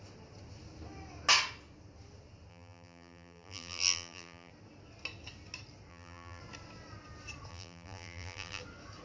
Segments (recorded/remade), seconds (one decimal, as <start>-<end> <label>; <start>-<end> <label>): 0.0-2.5 recorded; 2.5-4.5 remade; 4.5-5.9 recorded; 5.9-6.4 remade; 6.4-7.5 recorded; 7.5-8.6 remade; 8.6-9.0 recorded